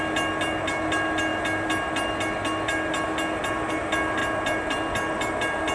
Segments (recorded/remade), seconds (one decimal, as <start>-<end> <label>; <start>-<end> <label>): 0.0-5.7 recorded